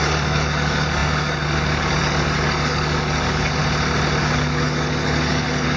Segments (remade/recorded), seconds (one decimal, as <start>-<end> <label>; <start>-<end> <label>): 0.0-3.6 remade; 3.6-4.2 recorded; 4.2-5.8 remade